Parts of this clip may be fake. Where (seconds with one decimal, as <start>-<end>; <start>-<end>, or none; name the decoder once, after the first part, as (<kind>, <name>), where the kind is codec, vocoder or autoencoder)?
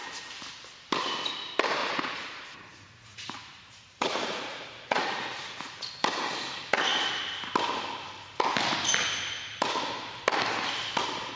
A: 1.8-5.8 (vocoder, Vocos)